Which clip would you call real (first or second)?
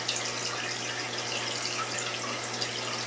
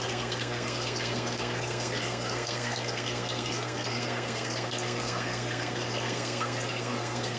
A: first